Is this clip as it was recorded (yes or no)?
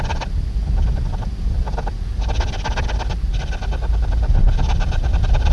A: yes